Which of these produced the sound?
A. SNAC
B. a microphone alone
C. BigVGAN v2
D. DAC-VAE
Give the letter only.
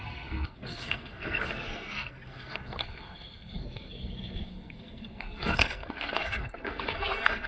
A